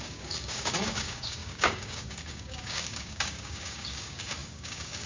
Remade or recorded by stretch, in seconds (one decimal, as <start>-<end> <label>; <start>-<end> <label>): 0.0-5.1 remade